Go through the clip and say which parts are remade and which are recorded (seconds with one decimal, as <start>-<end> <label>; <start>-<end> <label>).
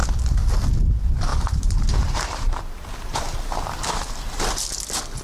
0.0-1.3 recorded; 1.3-4.4 remade; 4.4-5.2 recorded